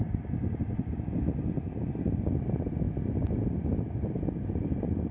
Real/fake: real